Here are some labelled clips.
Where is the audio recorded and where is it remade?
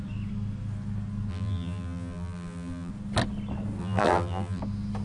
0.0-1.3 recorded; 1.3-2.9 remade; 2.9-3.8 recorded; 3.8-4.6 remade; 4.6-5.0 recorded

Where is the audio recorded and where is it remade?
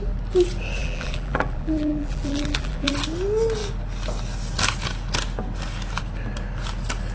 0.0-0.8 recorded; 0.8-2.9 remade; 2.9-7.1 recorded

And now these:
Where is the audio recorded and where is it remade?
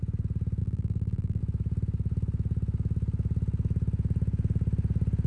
0.0-0.6 recorded; 0.6-1.4 remade; 1.4-5.3 recorded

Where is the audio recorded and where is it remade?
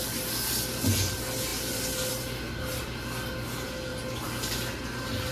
0.0-5.3 recorded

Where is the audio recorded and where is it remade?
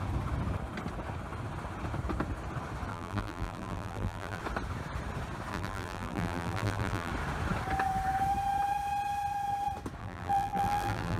0.0-2.9 recorded; 2.9-4.4 remade; 4.4-5.5 recorded; 5.5-7.1 remade; 7.1-10.0 recorded; 10.0-11.2 remade